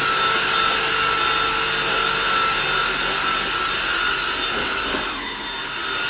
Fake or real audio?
real